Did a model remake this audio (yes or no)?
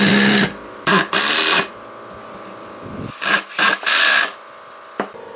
no